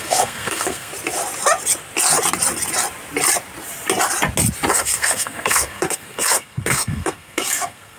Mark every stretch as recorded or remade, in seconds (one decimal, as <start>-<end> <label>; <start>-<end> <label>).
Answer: 0.0-0.9 remade; 0.9-4.7 recorded; 4.7-8.0 remade